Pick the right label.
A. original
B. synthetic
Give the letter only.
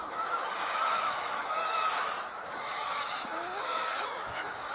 B